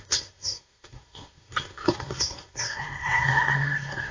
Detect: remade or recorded remade